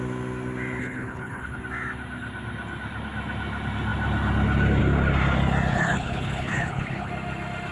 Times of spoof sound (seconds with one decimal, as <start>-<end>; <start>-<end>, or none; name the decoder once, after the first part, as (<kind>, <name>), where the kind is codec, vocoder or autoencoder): 0.8-1.6 (codec, HILCodec); 5.7-7.1